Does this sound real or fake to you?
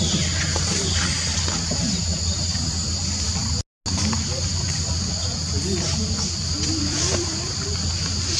real